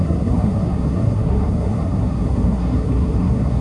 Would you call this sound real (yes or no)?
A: no